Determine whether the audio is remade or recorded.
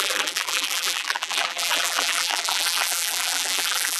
remade